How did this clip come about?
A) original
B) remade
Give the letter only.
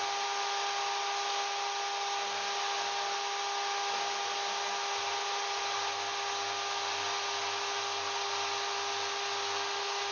A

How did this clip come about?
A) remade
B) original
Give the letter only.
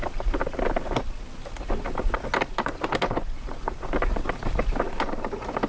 B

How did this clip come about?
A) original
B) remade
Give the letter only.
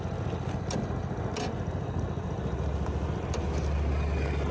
A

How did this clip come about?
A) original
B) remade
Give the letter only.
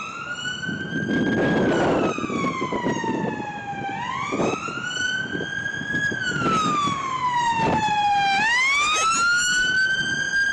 A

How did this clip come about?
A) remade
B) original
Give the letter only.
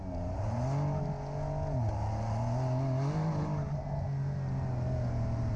B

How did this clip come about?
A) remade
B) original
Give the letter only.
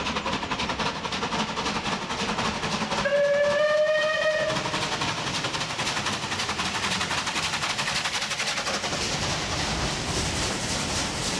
B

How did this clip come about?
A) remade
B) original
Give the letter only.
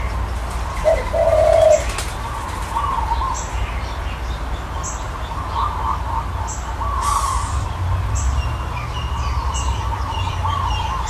B